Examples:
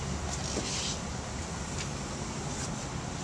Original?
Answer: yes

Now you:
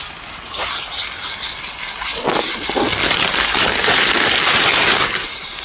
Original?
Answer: yes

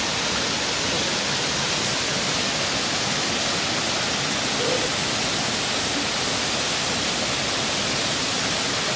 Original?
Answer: yes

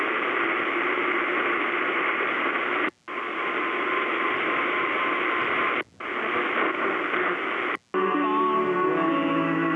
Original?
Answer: yes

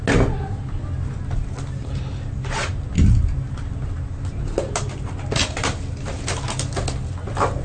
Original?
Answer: yes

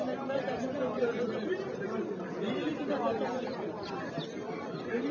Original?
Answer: no